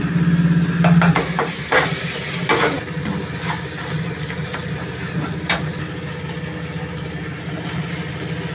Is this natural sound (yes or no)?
yes